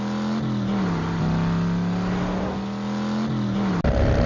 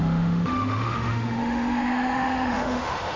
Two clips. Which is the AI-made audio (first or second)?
second